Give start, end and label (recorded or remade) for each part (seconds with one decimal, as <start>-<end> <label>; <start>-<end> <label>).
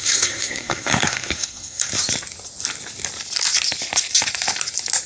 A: 0.0-1.9 remade; 1.9-5.1 recorded